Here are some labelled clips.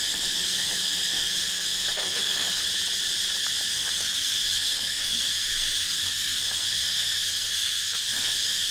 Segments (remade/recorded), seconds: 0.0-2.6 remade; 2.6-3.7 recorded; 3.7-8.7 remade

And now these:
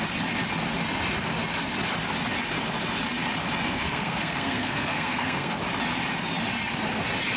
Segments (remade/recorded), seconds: 0.0-3.7 recorded; 3.7-5.6 remade; 5.6-7.4 recorded

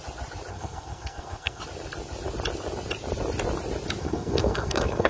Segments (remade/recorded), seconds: 0.0-0.5 recorded; 0.5-1.6 remade; 1.6-4.0 recorded; 4.0-5.1 remade

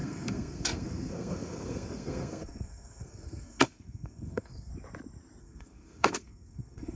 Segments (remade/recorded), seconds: 0.0-4.7 remade; 4.7-5.4 recorded; 5.4-7.0 remade

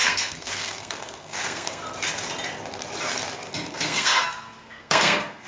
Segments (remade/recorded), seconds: 0.0-1.8 remade; 1.8-3.7 recorded; 3.7-5.5 remade

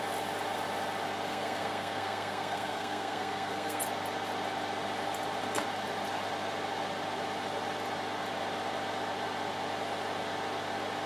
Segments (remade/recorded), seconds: 0.0-1.3 recorded; 1.3-3.8 remade; 3.8-11.1 recorded